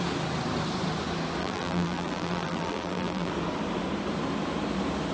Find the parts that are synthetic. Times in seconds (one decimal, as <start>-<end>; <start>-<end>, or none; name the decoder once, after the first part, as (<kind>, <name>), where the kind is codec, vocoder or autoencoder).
1.4-3.3 (vocoder, BigVGAN v2)